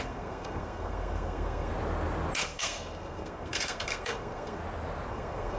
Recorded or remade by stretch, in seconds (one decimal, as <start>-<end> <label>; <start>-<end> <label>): 0.0-1.7 remade; 1.7-2.4 recorded; 2.4-4.6 remade; 4.6-5.1 recorded; 5.1-5.6 remade